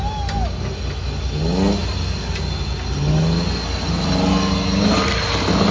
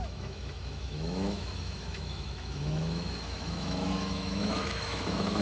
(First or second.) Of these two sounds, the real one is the first